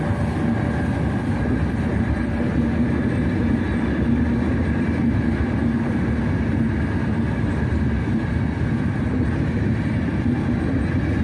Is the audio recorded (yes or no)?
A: yes